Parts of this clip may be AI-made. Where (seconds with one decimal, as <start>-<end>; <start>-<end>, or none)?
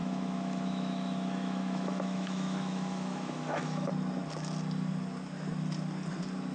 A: 0.0-3.9